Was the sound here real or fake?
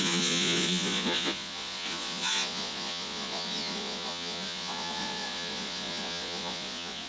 fake